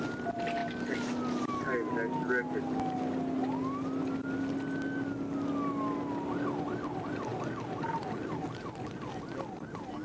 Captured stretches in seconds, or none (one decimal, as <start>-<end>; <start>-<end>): 0.0-10.0

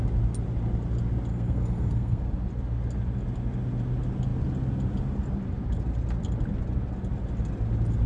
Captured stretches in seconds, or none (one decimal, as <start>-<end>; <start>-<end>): 0.0-1.3; 2.2-8.1

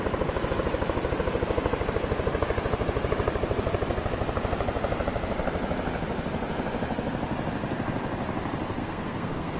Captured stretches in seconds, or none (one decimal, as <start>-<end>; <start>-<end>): 0.0-8.8

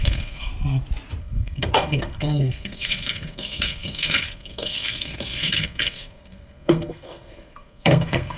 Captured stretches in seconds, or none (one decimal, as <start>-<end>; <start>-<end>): 0.5-1.2

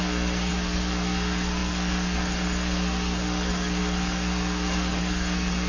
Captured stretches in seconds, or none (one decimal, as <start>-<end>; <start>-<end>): none